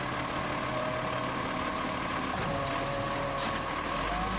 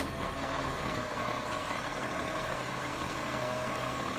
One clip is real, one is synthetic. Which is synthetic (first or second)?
second